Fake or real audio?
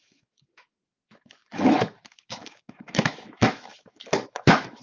fake